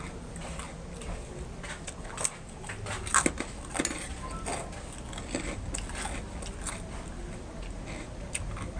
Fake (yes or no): no